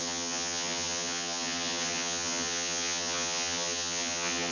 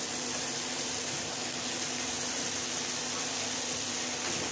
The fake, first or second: first